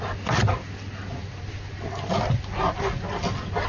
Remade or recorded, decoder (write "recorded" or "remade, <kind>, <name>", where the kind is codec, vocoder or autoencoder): recorded